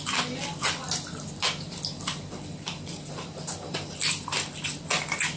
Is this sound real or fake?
real